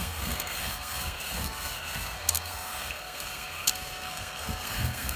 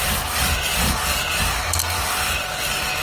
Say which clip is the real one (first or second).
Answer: second